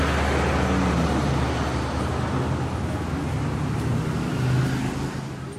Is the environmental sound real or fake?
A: real